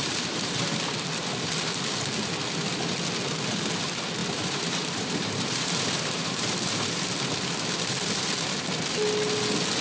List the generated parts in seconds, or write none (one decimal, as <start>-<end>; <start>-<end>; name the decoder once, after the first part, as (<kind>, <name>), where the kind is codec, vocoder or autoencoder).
0.0-0.9 (vocoder, BigVGAN v2); 4.2-7.1